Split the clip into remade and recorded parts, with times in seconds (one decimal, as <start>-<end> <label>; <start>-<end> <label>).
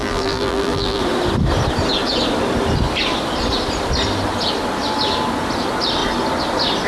0.0-1.0 remade; 1.0-6.9 recorded